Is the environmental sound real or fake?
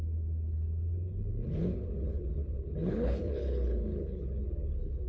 fake